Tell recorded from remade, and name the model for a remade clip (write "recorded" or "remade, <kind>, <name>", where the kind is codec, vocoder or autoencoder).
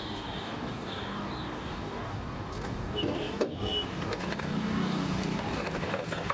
remade, codec, DAC